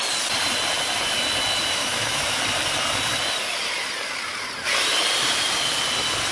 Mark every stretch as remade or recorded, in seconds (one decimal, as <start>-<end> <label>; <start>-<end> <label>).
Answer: 0.0-1.8 recorded; 1.8-2.4 remade; 2.4-6.3 recorded